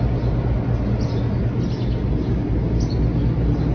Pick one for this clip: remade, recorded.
recorded